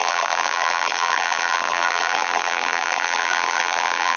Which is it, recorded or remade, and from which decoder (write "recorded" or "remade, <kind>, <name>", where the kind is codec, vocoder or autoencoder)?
remade, vocoder, BigVGAN v2